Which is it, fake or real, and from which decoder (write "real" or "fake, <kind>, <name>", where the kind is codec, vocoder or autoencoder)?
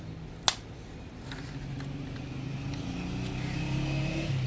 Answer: real